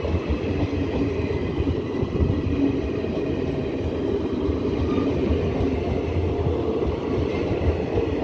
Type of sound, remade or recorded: recorded